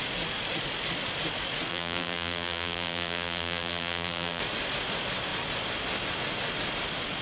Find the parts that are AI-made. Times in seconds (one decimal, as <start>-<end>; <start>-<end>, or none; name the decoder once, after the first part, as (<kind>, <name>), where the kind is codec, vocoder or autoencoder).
1.7-4.4 (vocoder, BigVGAN v2)